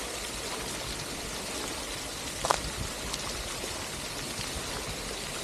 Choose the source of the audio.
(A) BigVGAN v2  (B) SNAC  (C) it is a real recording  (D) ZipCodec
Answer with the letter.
C